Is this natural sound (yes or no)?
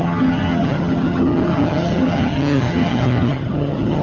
no